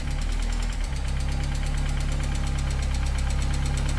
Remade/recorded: recorded